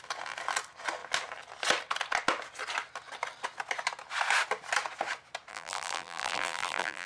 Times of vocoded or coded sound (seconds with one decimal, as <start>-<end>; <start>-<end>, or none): 5.5-7.1